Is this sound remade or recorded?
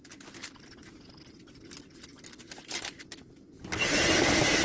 recorded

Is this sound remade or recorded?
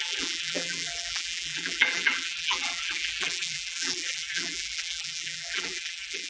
remade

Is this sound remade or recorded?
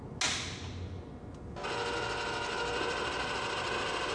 recorded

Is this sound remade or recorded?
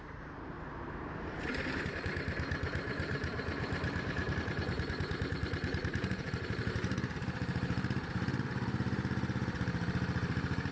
remade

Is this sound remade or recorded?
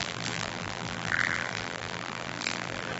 remade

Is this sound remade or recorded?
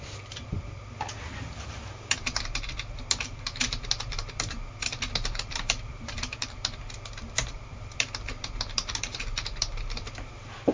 remade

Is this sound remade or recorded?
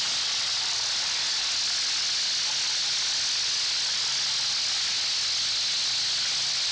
recorded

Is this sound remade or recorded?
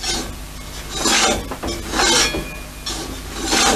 recorded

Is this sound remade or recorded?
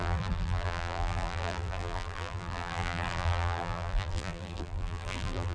remade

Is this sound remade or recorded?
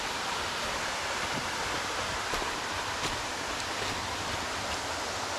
recorded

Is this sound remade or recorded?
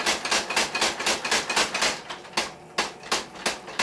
recorded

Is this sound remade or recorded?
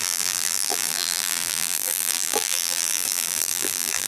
remade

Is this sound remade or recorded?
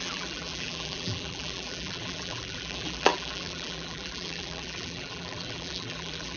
remade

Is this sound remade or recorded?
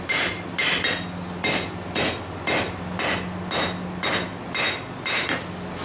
recorded